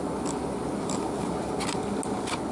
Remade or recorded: recorded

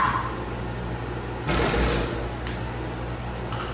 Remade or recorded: recorded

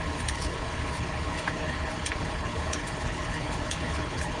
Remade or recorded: remade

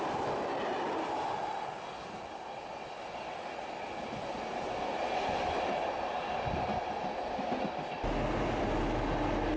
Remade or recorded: recorded